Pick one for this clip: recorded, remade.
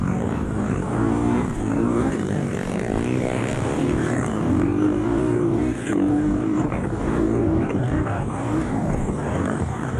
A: remade